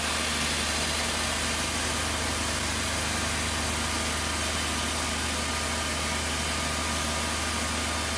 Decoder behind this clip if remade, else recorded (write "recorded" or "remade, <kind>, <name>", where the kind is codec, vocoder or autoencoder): recorded